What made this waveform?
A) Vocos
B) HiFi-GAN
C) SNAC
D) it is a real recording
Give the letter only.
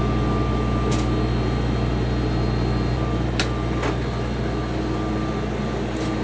D